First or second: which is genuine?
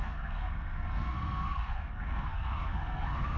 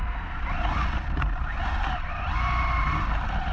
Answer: second